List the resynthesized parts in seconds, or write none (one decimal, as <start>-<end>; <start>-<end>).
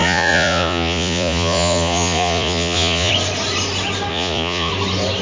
0.0-3.1; 4.1-4.7